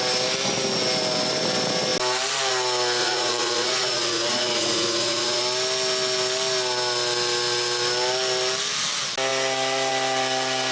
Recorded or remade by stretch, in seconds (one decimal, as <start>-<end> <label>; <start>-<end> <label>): 0.0-3.0 recorded; 3.0-5.4 remade; 5.4-10.7 recorded